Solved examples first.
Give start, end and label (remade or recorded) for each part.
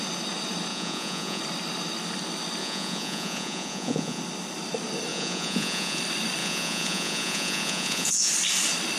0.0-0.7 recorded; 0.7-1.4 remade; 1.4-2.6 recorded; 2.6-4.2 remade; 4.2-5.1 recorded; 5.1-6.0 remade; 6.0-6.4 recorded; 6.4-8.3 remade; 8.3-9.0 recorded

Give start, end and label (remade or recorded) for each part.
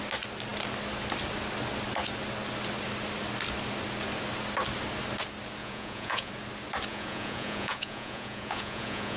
0.0-5.6 recorded; 5.6-6.3 remade; 6.3-6.9 recorded; 6.9-9.2 remade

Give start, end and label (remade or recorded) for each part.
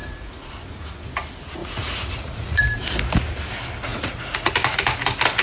0.0-0.6 remade; 0.6-1.6 recorded; 1.6-2.6 remade; 2.6-3.9 recorded; 3.9-4.5 remade; 4.5-5.4 recorded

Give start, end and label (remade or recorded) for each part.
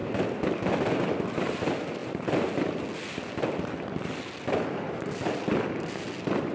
0.0-6.5 recorded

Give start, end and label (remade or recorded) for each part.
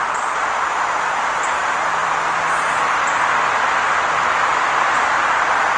0.0-5.8 recorded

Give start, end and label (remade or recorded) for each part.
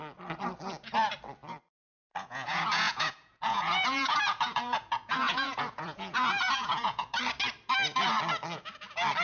0.0-2.1 recorded; 2.1-7.2 remade; 7.2-9.2 recorded